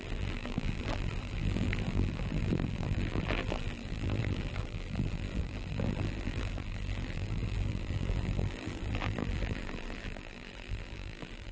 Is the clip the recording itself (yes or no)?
no